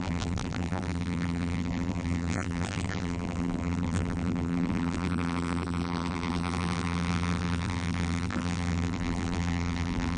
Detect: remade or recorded remade